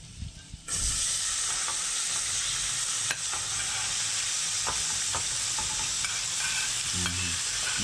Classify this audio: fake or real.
real